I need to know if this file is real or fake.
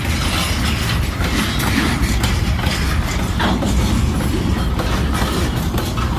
real